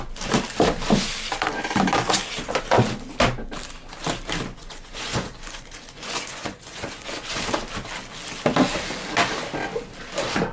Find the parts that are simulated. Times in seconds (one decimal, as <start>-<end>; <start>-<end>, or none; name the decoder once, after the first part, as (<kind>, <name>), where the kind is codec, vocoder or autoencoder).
4.5-7.5 (vocoder, Vocos)